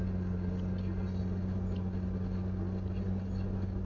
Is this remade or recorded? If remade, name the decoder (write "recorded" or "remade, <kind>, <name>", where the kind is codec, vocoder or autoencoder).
recorded